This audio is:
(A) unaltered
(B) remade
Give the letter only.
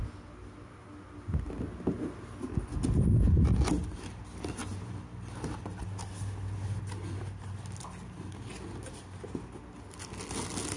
A